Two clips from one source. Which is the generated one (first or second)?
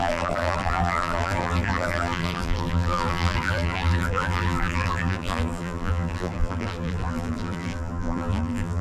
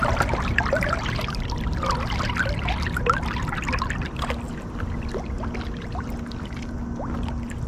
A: first